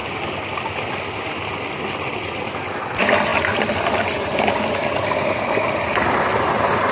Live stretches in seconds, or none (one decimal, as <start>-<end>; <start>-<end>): 0.0-6.9